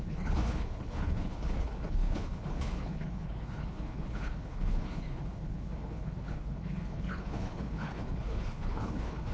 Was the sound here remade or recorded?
remade